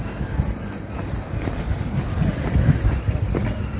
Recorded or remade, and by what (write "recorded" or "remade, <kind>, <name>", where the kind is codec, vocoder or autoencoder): recorded